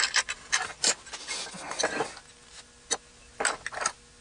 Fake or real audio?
real